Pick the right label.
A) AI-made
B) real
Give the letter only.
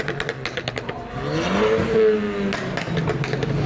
B